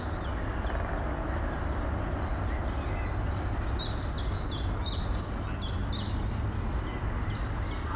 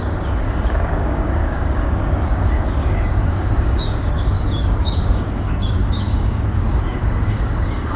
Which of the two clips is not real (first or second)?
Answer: second